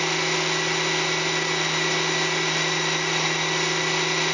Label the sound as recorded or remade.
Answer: recorded